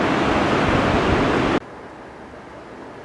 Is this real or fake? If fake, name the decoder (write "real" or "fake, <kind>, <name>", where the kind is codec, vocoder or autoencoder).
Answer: real